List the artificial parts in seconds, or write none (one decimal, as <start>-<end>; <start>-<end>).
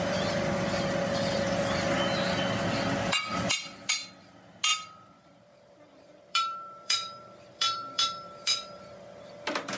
3.3-3.9; 4.7-9.3